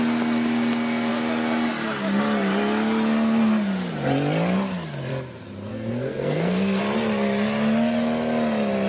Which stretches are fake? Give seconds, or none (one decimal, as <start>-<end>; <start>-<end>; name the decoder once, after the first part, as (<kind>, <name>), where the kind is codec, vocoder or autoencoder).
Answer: 5.7-6.8 (codec, SNAC)